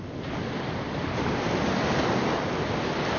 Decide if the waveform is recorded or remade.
recorded